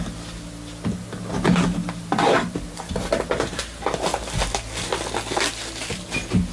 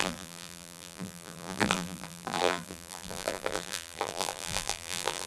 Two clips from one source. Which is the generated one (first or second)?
second